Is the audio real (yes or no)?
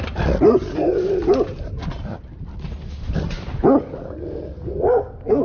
yes